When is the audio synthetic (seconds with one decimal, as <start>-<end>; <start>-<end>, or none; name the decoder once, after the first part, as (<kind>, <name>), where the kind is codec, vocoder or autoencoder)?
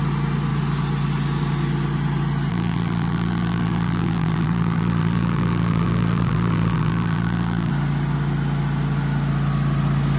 2.5-7.7 (vocoder, BigVGAN v2)